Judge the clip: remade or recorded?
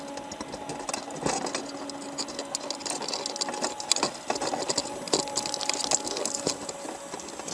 recorded